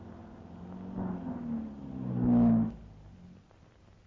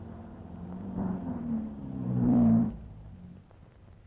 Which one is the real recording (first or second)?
first